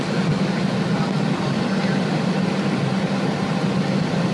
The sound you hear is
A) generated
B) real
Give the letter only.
B